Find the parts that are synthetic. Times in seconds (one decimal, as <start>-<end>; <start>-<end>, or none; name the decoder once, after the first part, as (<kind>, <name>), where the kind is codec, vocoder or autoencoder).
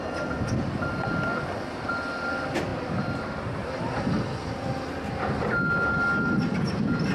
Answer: 2.7-3.2 (vocoder, BigVGAN v2)